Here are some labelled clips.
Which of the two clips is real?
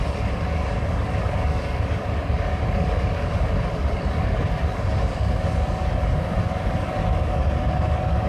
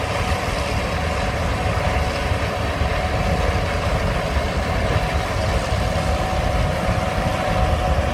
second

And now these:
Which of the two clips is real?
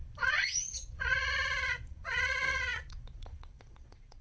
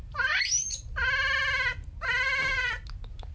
second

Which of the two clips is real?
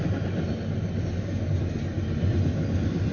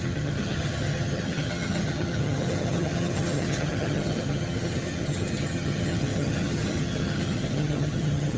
first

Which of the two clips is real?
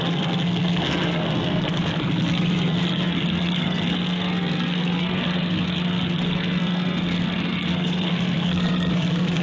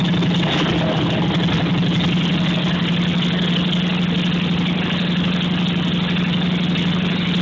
second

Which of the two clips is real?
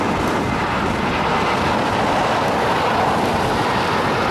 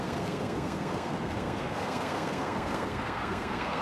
first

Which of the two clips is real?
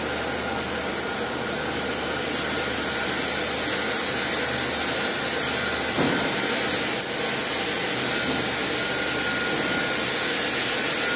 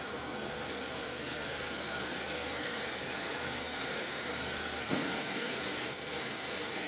first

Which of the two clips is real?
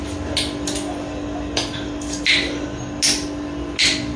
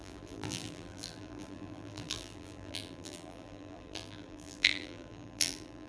first